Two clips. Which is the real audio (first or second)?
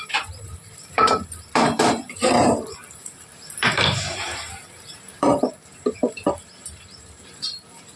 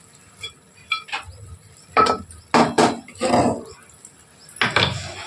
second